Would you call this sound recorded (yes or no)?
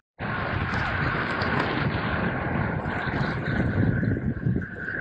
yes